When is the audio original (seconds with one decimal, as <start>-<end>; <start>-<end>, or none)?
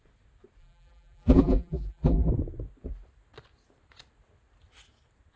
0.0-0.6; 2.3-5.4